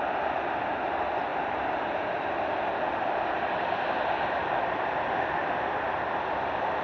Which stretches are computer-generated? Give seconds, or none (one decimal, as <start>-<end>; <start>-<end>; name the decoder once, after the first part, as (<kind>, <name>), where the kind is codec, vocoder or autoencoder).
none